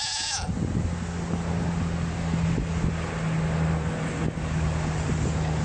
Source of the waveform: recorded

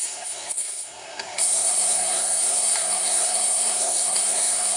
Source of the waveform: remade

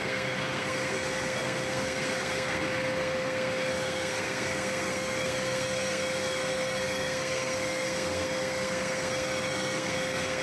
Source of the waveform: remade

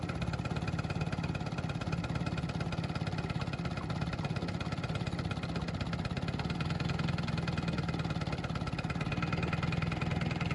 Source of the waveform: recorded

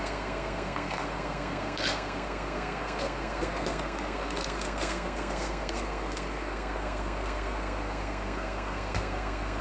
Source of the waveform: remade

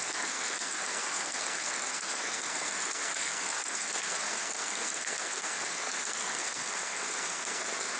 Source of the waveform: remade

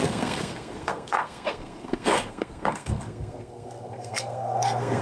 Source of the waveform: remade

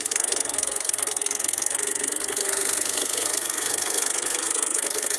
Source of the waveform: remade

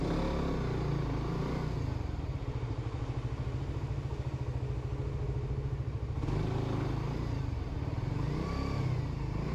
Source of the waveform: recorded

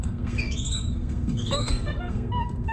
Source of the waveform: remade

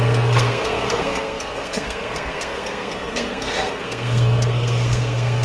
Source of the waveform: remade